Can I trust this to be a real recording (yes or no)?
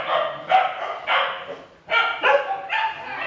yes